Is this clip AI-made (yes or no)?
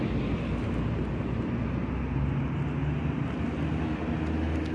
no